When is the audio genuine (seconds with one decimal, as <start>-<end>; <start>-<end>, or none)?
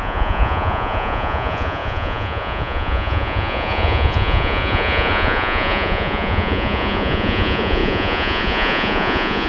none